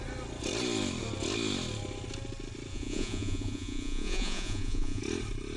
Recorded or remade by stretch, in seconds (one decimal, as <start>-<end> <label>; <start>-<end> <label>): 0.0-2.7 recorded; 2.7-5.0 remade; 5.0-5.6 recorded